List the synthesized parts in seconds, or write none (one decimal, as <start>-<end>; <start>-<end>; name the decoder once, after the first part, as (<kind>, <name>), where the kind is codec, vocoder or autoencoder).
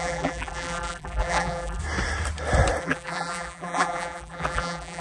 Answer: 0.0-1.8 (vocoder, BigVGAN v2); 2.8-5.0